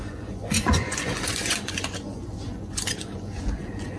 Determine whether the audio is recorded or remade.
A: remade